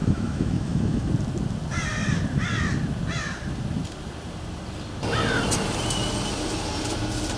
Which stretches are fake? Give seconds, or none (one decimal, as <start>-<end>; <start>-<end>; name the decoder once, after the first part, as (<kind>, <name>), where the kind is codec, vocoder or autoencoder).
0.0-1.1 (autoencoder, DAC-VAE)